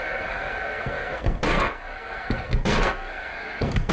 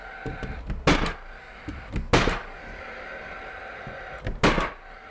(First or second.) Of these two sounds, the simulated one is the first